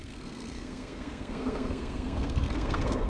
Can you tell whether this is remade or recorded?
remade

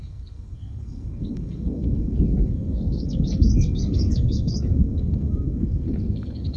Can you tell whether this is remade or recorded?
remade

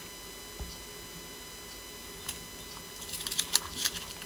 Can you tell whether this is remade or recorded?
recorded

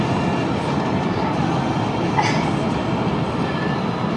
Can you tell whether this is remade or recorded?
recorded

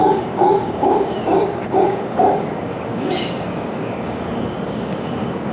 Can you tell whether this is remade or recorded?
remade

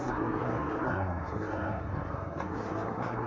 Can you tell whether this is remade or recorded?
remade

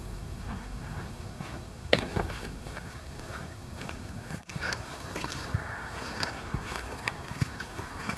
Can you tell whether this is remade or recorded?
remade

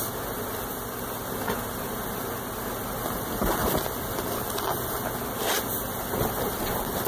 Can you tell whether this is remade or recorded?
recorded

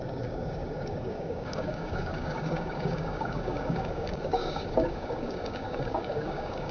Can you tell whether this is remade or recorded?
remade